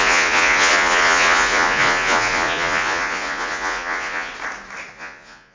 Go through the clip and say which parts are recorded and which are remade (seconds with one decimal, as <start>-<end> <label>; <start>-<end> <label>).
0.0-4.3 remade; 4.3-4.9 recorded; 4.9-5.5 remade